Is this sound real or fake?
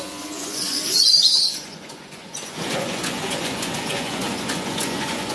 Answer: fake